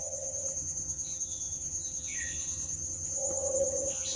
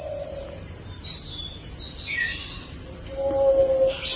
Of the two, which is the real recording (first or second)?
second